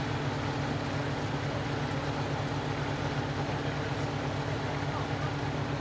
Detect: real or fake real